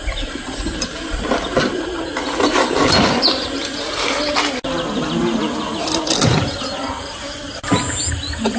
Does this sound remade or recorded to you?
recorded